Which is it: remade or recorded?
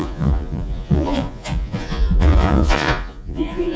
remade